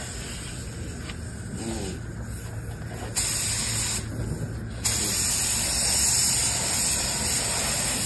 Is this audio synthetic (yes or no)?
no